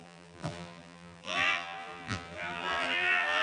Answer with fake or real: fake